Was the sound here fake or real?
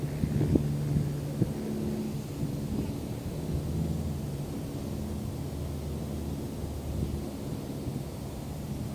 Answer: real